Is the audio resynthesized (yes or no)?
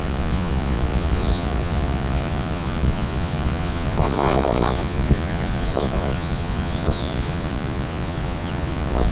yes